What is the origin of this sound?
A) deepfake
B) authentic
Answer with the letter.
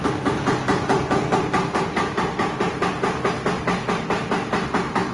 B